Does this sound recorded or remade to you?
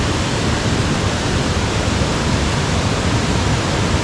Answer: recorded